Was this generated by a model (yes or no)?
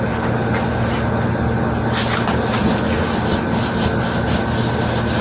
no